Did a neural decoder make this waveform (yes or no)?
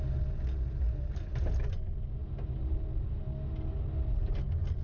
no